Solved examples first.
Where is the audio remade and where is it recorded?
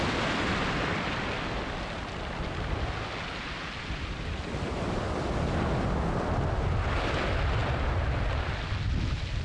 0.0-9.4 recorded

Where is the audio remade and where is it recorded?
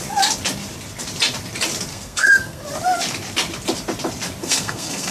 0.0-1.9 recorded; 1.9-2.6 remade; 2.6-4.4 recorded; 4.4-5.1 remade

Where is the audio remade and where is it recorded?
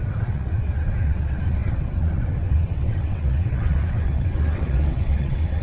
0.0-5.6 remade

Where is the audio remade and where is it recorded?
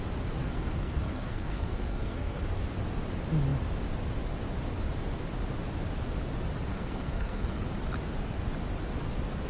0.0-0.4 recorded; 0.4-2.4 remade; 2.4-6.7 recorded; 6.7-7.6 remade; 7.6-9.5 recorded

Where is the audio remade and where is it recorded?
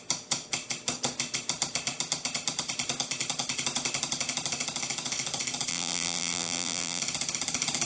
0.0-5.7 recorded; 5.7-7.0 remade; 7.0-7.9 recorded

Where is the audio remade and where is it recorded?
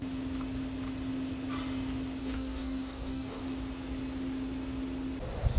0.0-2.2 recorded; 2.2-3.4 remade; 3.4-5.6 recorded